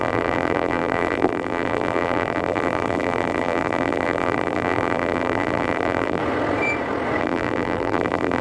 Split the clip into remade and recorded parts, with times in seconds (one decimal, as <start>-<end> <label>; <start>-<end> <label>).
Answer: 0.0-6.2 remade; 6.2-7.2 recorded; 7.2-8.4 remade